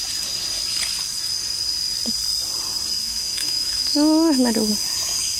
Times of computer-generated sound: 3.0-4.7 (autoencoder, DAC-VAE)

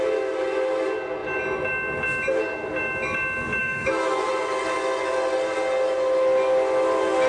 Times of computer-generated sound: 3.6-4.3 (autoencoder, DAC-VAE)